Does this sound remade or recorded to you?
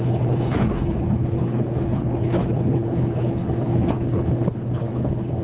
remade